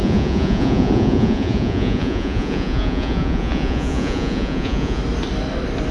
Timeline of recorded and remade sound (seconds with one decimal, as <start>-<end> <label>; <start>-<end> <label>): 0.0-5.0 remade; 5.0-5.9 recorded